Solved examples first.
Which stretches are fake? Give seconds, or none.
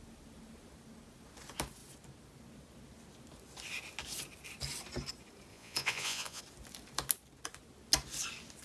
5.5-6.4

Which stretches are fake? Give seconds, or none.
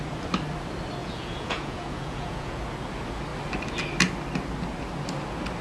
1.0-2.6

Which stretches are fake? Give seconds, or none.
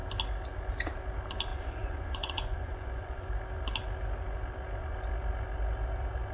1.5-3.3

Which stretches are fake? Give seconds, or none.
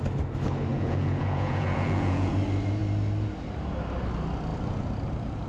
0.7-2.3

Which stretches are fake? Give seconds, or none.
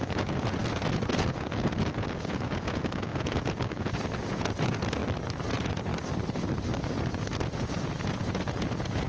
0.0-5.0; 5.5-5.9; 6.8-9.1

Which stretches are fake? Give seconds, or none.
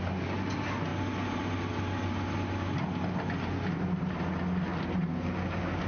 none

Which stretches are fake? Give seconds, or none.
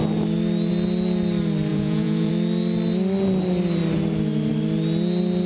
1.7-2.3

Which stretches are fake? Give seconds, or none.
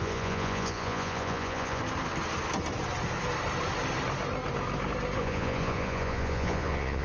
0.0-1.8; 5.2-7.0